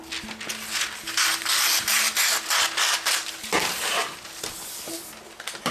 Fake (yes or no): no